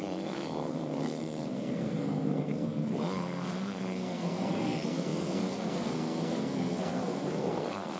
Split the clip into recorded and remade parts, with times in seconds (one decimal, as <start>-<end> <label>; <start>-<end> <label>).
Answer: 0.0-8.0 remade